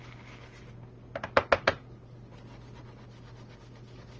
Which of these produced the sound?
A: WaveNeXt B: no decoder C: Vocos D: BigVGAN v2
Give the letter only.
B